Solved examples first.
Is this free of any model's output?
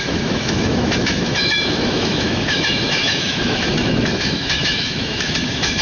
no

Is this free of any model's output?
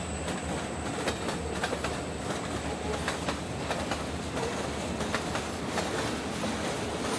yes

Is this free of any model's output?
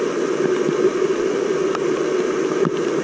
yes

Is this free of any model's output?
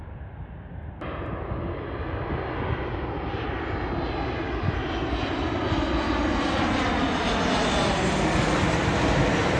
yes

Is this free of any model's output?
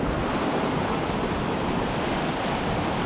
yes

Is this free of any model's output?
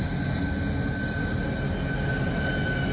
yes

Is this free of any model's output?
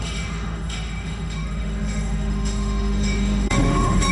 no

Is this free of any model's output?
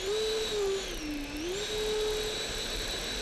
yes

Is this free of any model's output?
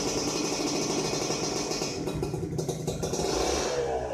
yes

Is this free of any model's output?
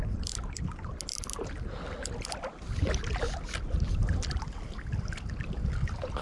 yes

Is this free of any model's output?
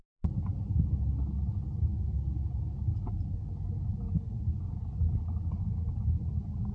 yes